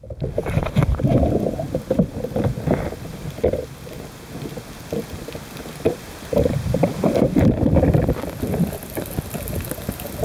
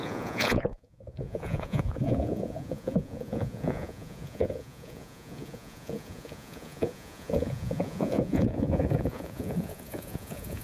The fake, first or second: second